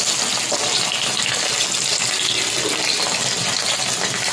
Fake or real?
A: real